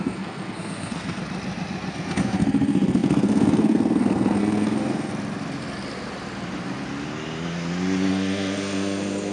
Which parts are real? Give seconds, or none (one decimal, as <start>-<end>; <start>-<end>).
1.2-1.9; 5.1-8.1